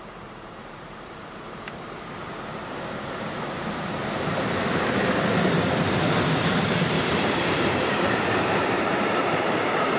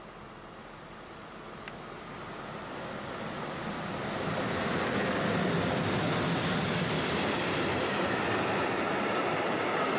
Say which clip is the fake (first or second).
first